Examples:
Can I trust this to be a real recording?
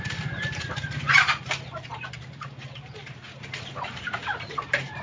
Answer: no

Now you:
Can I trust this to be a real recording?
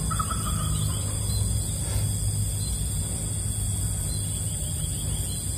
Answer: yes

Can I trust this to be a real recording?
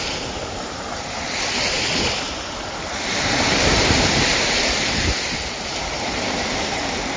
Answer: no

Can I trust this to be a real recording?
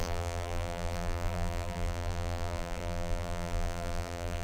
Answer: no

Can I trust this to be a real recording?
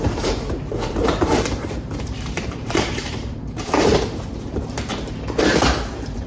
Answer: no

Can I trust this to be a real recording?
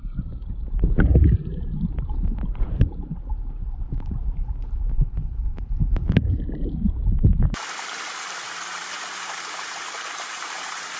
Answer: no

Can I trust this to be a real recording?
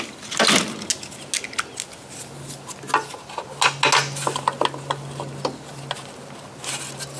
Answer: yes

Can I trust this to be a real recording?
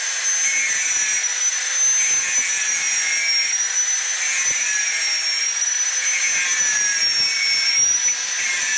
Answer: yes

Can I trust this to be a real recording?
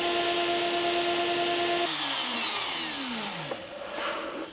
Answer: yes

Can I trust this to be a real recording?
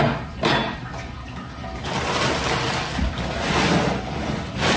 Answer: yes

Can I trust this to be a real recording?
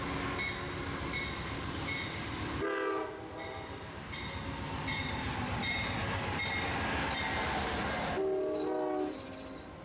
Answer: yes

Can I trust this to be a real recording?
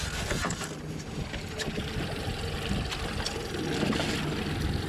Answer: yes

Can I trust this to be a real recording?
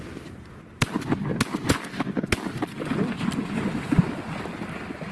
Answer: yes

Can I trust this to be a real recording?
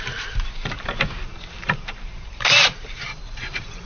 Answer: no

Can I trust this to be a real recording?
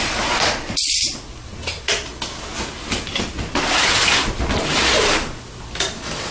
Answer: yes